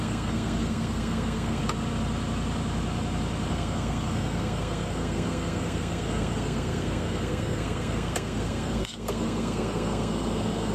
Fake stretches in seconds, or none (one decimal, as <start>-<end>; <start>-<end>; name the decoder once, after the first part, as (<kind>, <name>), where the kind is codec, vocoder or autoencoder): 0.0-1.6 (codec, SNAC); 3.5-10.7